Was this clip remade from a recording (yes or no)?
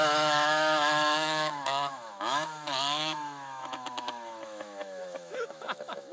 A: yes